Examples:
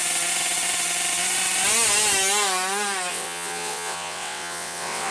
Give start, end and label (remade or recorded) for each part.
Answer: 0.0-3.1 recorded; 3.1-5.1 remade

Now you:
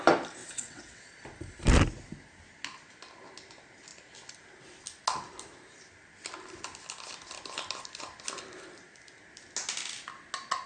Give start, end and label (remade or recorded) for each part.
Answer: 0.0-0.4 recorded; 0.4-1.0 remade; 1.0-10.7 recorded

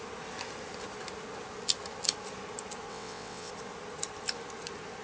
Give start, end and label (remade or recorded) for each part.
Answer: 0.0-2.9 recorded; 2.9-3.5 remade; 3.5-5.0 recorded

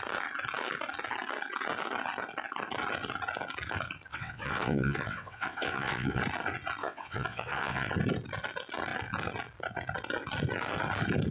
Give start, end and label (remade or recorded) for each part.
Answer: 0.0-4.1 recorded; 4.1-6.2 remade; 6.2-6.8 recorded; 6.8-7.9 remade; 7.9-11.3 recorded

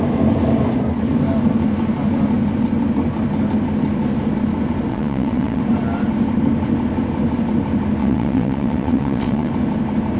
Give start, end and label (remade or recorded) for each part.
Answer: 0.0-4.9 recorded; 4.9-5.6 remade; 5.6-8.0 recorded; 8.0-9.5 remade; 9.5-10.2 recorded

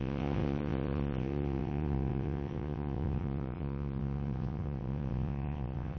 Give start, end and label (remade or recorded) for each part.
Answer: 0.0-6.0 remade

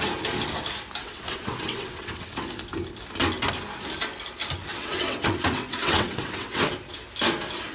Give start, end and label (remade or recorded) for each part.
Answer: 0.0-1.0 recorded; 1.0-2.3 remade; 2.3-4.7 recorded; 4.7-6.6 remade; 6.6-7.7 recorded